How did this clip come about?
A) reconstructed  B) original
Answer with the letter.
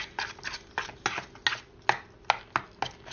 B